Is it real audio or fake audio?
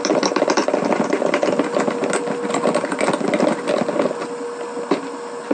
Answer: real